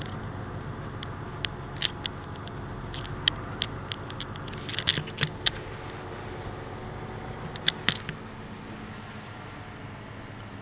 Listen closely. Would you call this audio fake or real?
real